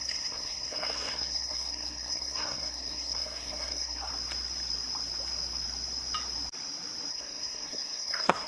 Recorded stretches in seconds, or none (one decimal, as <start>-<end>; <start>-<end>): 4.1-7.1